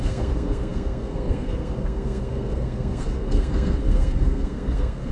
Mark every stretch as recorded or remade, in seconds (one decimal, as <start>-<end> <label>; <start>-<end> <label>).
0.0-5.1 remade